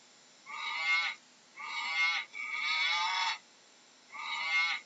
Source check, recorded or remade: recorded